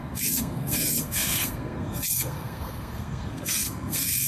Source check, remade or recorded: remade